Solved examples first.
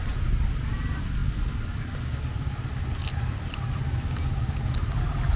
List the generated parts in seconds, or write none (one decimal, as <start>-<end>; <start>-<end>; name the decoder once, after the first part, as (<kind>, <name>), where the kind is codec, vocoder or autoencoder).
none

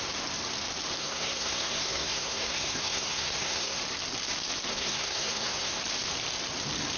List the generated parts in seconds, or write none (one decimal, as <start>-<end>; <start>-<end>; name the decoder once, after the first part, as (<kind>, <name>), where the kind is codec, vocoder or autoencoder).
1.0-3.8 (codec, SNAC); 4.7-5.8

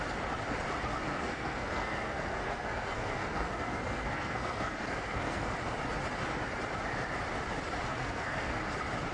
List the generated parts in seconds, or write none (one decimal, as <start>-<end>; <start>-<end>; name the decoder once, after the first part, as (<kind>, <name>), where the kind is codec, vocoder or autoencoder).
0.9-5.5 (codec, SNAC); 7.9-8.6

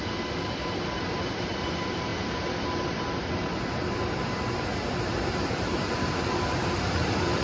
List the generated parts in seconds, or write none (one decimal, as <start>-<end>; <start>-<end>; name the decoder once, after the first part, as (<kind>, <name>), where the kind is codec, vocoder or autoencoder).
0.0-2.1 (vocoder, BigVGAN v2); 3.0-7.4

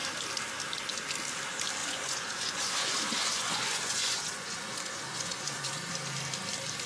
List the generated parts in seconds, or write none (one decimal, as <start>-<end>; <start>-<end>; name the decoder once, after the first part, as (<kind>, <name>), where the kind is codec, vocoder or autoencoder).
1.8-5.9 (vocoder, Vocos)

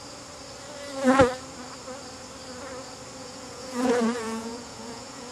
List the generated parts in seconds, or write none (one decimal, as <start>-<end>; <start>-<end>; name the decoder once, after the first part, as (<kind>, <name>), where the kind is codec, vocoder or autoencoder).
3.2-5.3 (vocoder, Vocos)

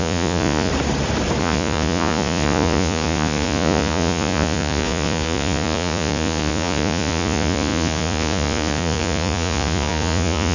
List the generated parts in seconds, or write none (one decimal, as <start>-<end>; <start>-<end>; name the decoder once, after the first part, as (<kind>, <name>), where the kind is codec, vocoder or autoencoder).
0.0-0.7 (vocoder, Vocos); 1.4-10.5